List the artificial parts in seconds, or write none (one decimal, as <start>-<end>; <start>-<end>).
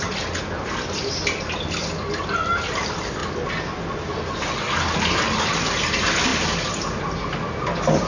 none